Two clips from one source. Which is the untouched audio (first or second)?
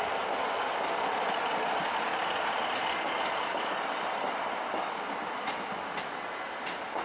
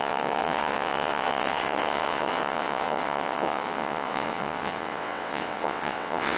first